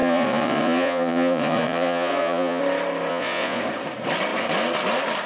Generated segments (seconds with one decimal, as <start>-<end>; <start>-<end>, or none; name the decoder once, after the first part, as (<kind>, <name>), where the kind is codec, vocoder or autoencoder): 0.0-2.6 (vocoder, Vocos); 3.1-3.6